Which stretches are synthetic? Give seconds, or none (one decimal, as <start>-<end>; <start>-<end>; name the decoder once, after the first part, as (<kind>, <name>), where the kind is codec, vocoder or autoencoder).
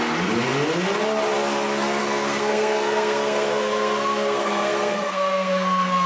2.0-6.1 (codec, SNAC)